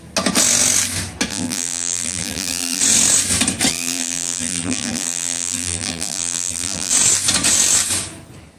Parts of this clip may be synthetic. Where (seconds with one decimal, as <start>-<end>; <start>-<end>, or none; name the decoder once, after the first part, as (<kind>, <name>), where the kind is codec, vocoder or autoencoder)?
1.3-2.8 (vocoder, BigVGAN v2); 3.7-6.9